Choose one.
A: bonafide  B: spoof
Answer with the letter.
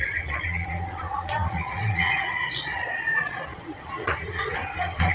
B